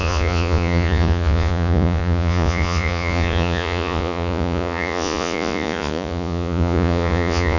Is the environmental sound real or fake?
fake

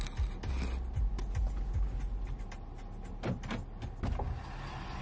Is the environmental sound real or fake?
real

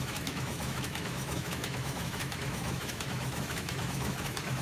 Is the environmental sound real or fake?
fake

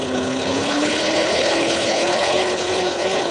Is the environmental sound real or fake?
fake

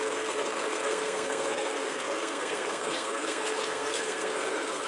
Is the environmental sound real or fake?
fake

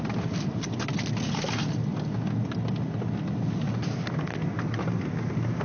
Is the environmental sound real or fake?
real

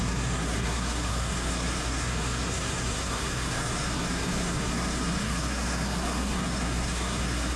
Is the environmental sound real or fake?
fake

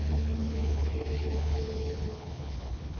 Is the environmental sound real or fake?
fake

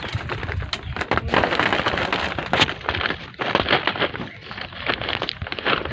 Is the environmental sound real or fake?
real